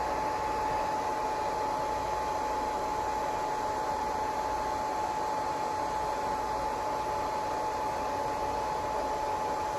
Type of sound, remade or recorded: recorded